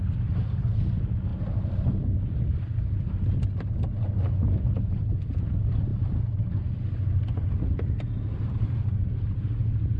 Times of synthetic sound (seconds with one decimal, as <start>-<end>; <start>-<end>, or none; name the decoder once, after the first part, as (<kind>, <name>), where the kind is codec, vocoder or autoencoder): none